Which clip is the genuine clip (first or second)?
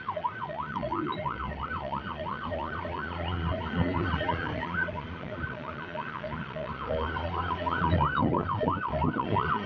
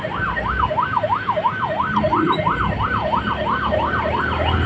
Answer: second